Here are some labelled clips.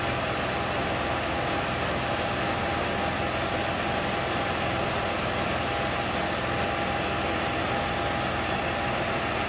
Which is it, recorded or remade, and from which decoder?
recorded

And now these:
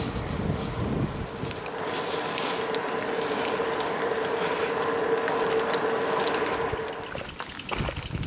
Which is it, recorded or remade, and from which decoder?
recorded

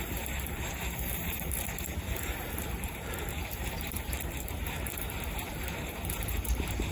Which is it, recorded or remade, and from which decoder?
remade, vocoder, BigVGAN v2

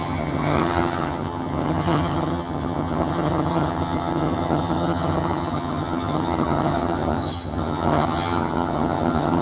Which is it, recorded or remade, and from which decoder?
remade, vocoder, HiFi-GAN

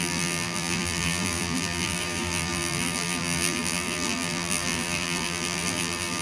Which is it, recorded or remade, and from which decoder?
remade, vocoder, BigVGAN v2